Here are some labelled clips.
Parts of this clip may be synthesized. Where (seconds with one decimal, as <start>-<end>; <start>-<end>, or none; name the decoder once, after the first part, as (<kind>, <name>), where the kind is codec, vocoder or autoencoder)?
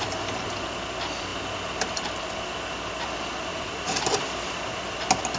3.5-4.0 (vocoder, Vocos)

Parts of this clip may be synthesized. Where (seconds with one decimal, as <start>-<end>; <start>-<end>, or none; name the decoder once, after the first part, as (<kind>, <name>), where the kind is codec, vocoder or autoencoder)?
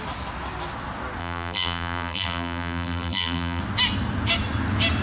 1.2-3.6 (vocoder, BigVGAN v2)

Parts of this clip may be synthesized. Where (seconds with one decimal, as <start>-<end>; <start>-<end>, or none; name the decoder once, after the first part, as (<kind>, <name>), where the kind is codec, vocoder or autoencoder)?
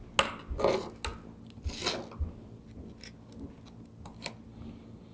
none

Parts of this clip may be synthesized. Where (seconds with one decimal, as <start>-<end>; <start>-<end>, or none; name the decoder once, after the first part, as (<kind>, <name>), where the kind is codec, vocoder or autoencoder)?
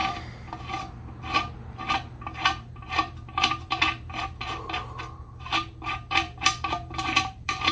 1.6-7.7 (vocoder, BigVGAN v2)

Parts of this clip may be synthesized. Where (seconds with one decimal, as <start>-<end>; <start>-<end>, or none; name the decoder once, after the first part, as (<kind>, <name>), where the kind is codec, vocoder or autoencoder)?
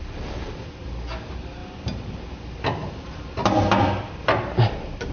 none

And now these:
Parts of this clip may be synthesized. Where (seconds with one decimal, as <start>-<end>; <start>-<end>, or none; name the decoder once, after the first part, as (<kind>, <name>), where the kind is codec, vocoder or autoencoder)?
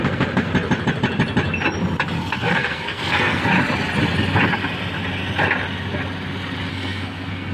0.0-0.5 (codec, SNAC); 2.2-3.5; 6.7-7.5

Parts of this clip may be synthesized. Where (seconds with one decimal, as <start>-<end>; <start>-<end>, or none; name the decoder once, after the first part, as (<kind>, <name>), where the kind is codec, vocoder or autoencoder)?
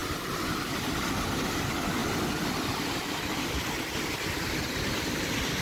0.0-0.5 (vocoder, BigVGAN v2); 2.0-5.6